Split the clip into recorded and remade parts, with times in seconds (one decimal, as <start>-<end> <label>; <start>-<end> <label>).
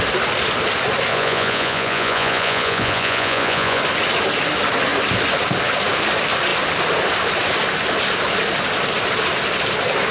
0.0-1.1 recorded; 1.1-3.8 remade; 3.8-10.1 recorded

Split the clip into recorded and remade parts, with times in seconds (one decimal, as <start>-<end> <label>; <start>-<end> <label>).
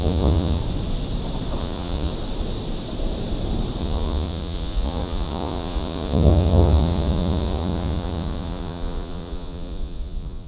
0.0-0.6 remade; 0.6-1.6 recorded; 1.6-2.1 remade; 2.1-3.8 recorded; 3.8-10.5 remade